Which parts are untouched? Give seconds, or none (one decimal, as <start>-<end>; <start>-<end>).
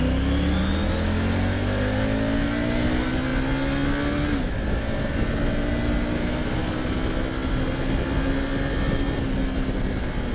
0.0-10.3